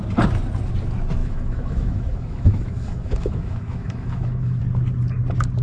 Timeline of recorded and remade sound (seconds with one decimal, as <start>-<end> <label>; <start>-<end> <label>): 0.0-1.2 recorded; 1.2-4.6 remade; 4.6-5.6 recorded